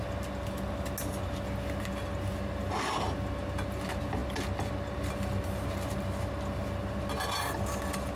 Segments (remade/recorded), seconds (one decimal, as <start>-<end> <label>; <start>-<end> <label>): 0.0-8.2 recorded